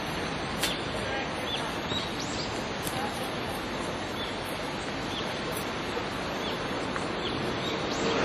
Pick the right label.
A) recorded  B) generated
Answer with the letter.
A